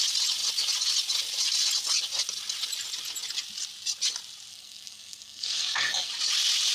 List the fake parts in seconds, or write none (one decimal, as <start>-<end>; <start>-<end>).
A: 4.5-6.1